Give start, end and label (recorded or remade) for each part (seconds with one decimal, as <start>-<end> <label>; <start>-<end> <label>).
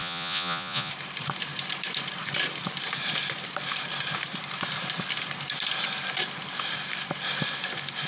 0.0-0.9 remade; 0.9-8.1 recorded